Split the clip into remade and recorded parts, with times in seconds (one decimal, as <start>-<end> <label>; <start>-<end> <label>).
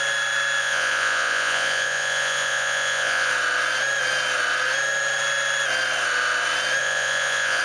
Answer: 0.0-0.6 recorded; 0.6-3.3 remade; 3.3-6.8 recorded; 6.8-7.6 remade